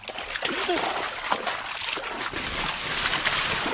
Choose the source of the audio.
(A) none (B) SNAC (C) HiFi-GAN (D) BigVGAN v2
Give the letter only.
A